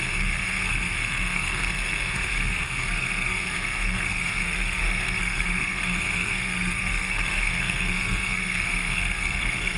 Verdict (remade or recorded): remade